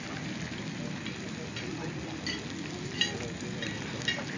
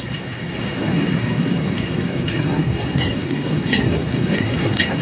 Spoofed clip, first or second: second